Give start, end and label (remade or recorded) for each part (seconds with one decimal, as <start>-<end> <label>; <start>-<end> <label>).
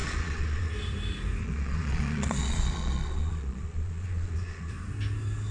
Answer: 0.0-0.7 remade; 0.7-1.4 recorded; 1.4-4.7 remade; 4.7-5.5 recorded